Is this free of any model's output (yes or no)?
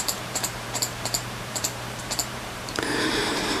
no